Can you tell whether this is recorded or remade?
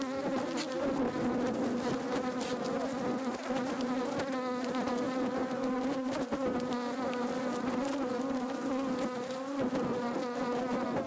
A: recorded